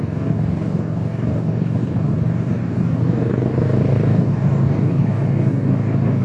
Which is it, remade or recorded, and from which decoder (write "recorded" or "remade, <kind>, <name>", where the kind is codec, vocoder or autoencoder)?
remade, codec, DAC